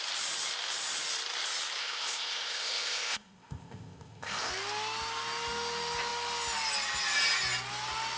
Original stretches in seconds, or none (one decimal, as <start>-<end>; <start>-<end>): 0.0-1.8; 4.5-8.2